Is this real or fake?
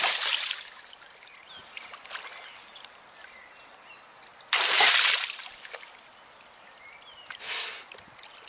real